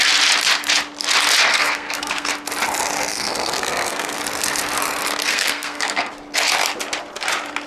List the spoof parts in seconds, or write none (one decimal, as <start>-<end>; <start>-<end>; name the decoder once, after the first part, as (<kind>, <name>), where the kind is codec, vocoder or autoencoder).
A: 1.5-2.3 (codec, SNAC); 3.1-4.2; 5.3-6.1